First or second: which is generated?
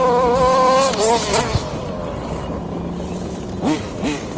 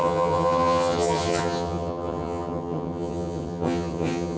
second